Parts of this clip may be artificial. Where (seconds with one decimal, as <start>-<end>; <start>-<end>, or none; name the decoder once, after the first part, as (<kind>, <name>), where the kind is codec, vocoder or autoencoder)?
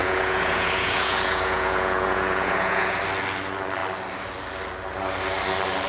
0.0-3.0 (vocoder, Vocos)